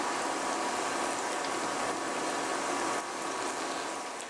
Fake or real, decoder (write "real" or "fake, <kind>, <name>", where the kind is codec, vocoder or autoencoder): real